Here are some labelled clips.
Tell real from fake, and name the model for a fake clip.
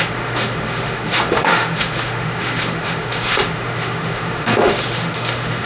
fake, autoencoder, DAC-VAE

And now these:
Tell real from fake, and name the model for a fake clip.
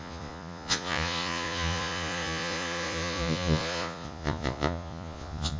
fake, vocoder, Vocos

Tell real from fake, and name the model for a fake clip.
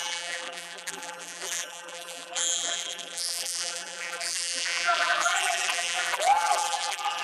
fake, vocoder, BigVGAN v2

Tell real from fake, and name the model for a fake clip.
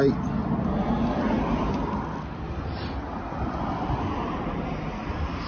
real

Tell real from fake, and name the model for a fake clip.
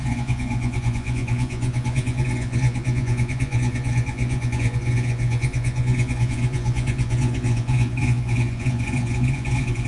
fake, vocoder, Vocos